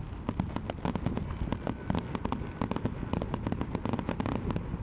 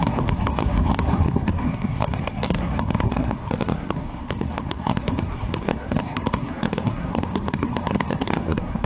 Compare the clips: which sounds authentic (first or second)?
first